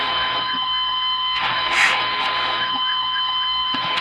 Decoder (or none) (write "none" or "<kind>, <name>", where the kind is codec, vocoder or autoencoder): autoencoder, DAC-VAE